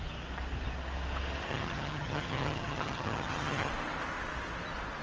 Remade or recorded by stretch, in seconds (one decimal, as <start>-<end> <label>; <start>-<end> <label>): 0.0-1.5 recorded; 1.5-3.7 remade; 3.7-5.0 recorded